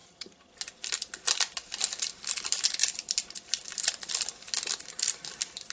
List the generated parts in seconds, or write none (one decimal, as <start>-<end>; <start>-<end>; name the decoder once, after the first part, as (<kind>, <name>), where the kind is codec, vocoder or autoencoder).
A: 0.0-0.5 (vocoder, HiFi-GAN)